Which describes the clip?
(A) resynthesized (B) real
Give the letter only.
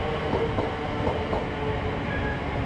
B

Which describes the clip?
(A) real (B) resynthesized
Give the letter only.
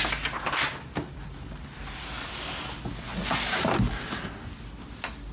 A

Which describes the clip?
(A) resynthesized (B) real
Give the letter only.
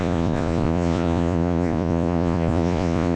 A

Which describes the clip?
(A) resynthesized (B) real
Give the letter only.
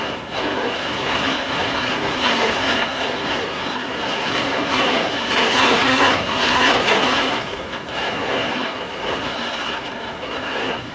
A